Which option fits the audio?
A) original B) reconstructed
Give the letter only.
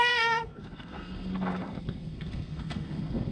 B